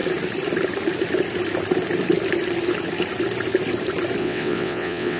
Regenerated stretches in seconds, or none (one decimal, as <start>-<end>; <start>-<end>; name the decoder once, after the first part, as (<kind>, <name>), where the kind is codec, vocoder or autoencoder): 4.2-5.2 (vocoder, WaveNeXt)